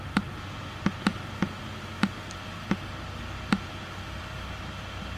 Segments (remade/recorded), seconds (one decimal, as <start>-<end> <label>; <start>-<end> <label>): 0.0-5.2 recorded